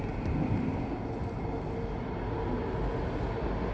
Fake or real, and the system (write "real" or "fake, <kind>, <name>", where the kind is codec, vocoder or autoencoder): real